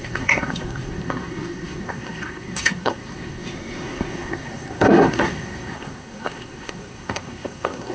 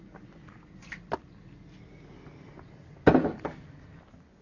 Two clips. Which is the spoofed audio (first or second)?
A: first